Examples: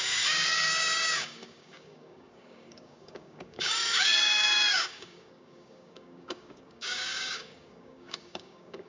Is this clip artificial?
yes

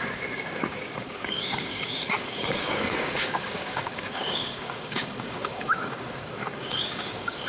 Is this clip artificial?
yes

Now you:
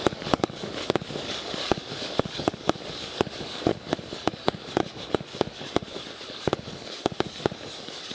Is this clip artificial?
yes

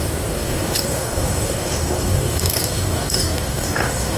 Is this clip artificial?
yes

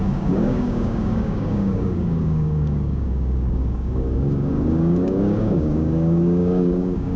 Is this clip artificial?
yes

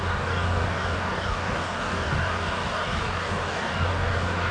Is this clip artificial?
yes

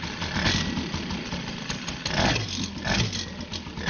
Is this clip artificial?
no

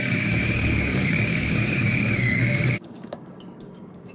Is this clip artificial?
yes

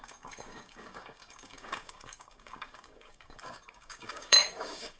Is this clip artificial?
yes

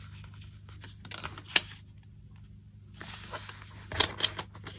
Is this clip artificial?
no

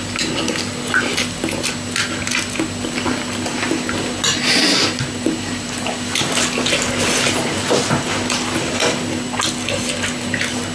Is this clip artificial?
no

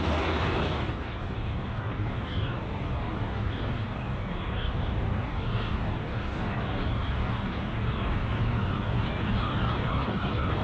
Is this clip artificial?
yes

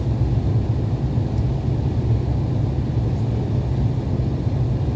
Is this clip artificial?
no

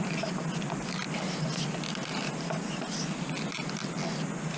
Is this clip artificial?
no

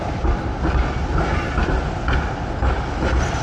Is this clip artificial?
no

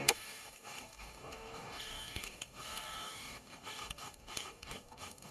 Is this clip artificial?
yes